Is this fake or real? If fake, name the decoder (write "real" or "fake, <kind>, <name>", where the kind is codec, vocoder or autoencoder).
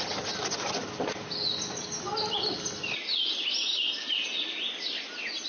real